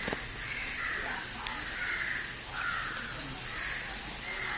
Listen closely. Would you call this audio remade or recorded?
recorded